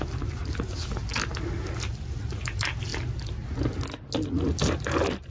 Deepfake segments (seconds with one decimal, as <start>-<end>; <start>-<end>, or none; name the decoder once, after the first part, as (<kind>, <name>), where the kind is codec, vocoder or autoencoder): none